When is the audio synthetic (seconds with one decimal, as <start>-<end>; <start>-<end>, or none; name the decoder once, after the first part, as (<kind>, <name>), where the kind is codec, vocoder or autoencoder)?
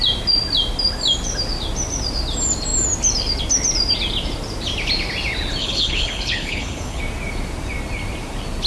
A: 5.6-7.0 (codec, HILCodec)